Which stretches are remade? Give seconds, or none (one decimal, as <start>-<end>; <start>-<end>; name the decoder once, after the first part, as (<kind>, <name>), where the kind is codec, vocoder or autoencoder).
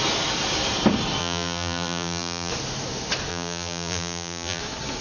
1.2-2.5 (vocoder, BigVGAN v2); 3.3-4.6